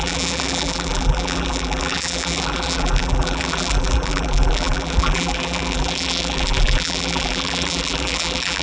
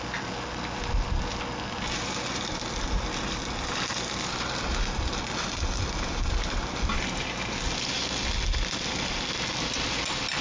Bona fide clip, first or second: second